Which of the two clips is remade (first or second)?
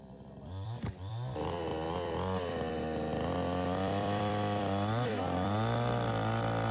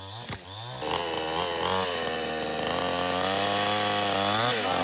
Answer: first